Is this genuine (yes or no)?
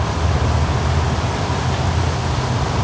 yes